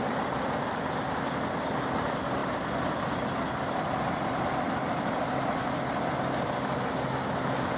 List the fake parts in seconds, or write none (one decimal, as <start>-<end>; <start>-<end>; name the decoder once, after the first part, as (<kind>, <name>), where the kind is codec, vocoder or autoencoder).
none